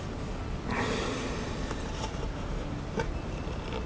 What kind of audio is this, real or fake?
real